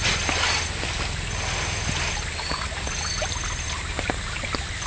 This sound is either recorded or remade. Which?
recorded